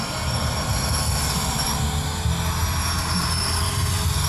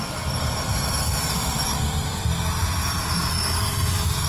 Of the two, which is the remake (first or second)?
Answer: second